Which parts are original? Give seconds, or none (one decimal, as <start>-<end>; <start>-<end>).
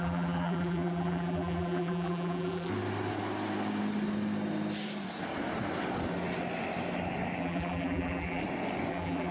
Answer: 2.7-7.4; 8.4-8.9